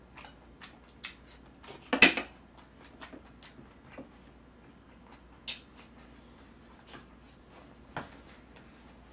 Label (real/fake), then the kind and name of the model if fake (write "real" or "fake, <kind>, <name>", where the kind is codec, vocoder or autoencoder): real